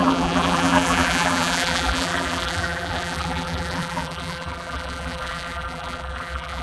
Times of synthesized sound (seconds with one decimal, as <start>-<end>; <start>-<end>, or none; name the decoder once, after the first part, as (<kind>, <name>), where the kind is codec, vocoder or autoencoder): 0.0-6.6 (vocoder, BigVGAN v2)